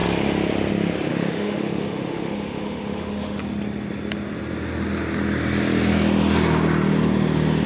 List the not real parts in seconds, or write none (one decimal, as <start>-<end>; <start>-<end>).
1.1-3.4

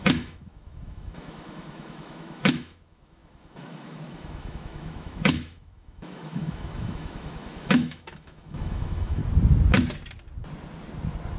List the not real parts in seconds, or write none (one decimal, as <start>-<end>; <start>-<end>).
0.0-9.2

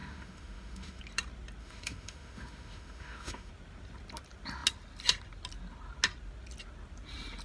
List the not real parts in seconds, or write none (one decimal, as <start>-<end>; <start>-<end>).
0.0-1.0; 1.6-3.5